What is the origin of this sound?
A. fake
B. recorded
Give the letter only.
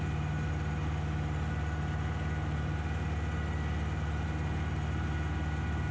B